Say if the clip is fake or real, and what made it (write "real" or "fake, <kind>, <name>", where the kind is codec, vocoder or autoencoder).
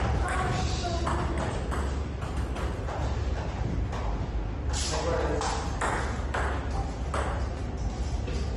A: real